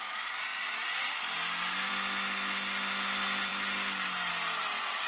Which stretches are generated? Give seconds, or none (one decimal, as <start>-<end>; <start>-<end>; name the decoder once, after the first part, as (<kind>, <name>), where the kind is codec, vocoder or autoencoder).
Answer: none